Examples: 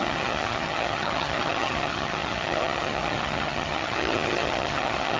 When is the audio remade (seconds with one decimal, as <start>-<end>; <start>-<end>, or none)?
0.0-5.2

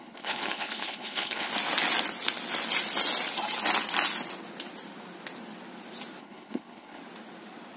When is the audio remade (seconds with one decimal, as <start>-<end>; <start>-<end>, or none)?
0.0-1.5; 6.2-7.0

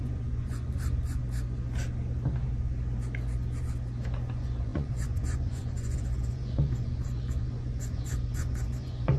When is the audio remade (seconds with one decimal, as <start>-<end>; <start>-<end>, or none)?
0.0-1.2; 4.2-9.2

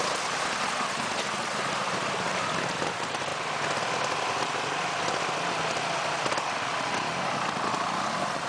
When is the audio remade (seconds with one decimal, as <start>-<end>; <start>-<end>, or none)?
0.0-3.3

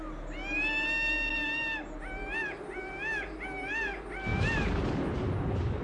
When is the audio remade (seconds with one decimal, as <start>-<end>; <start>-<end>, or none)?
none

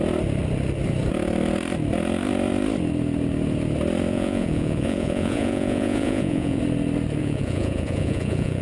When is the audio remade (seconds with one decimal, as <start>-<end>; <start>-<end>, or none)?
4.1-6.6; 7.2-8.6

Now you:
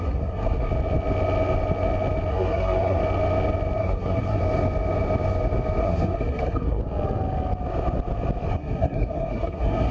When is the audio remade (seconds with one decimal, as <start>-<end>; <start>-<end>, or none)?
0.0-0.7; 2.3-3.0; 3.8-4.4; 5.8-6.8; 8.5-9.9